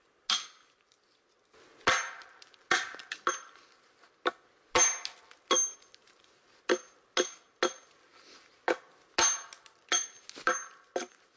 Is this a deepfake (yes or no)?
no